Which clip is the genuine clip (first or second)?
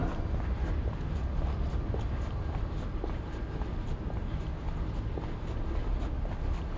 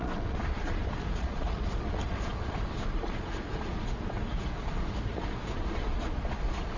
first